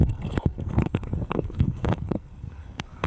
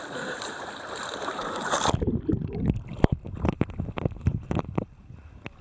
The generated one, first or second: first